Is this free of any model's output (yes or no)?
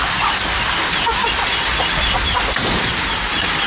yes